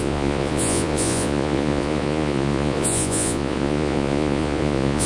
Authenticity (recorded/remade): remade